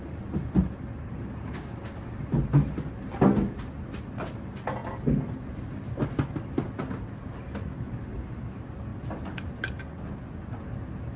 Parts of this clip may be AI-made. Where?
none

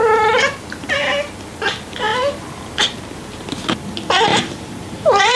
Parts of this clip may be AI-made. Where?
2.1-2.8 (vocoder, BigVGAN v2); 4.3-5.4